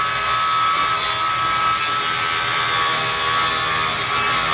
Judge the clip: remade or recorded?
recorded